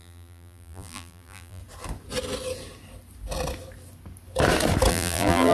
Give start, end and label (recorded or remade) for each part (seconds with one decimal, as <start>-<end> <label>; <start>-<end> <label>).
0.0-1.6 remade; 1.6-4.9 recorded; 4.9-5.5 remade